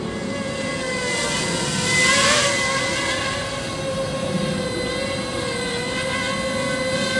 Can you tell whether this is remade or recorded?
recorded